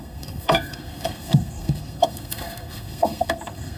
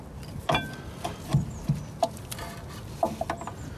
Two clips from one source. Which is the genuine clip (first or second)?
second